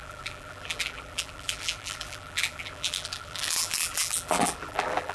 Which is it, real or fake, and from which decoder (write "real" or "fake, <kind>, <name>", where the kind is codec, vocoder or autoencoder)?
fake, vocoder, BigVGAN v2